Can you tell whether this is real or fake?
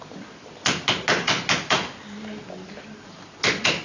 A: real